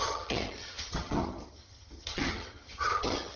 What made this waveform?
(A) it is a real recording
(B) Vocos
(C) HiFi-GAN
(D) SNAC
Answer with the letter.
C